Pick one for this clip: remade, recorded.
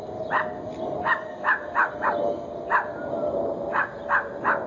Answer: recorded